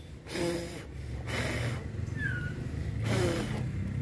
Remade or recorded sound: recorded